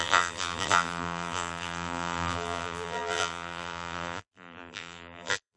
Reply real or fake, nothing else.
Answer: fake